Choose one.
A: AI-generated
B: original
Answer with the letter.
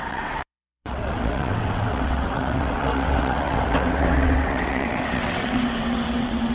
A